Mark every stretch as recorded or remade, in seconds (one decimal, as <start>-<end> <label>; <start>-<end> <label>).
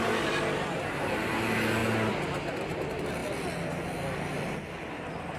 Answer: 0.0-5.4 recorded